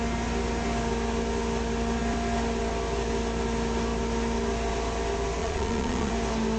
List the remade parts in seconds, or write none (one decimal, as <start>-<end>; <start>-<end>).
5.4-6.1